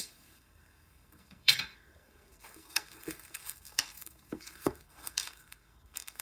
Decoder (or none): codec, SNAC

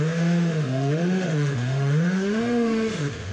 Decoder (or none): autoencoder, DAC-VAE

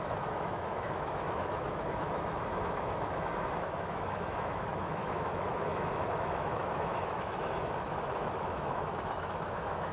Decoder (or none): autoencoder, DAC-VAE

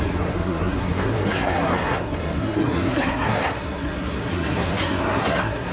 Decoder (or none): codec, SNAC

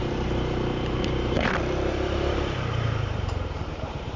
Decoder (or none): vocoder, BigVGAN v2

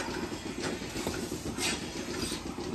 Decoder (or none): none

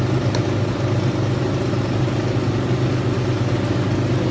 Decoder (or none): none